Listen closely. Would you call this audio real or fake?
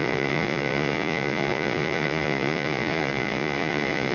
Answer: fake